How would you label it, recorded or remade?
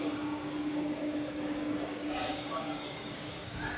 remade